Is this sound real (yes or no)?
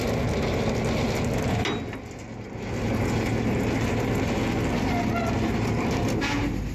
yes